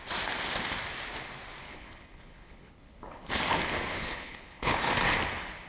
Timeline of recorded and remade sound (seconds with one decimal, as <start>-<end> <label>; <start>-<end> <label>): 0.0-1.7 recorded; 1.7-3.3 remade; 3.3-3.9 recorded; 3.9-4.9 remade; 4.9-5.7 recorded